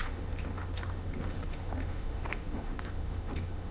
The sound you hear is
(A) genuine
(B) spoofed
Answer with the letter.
B